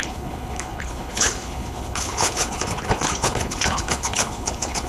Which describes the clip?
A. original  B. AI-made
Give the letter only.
B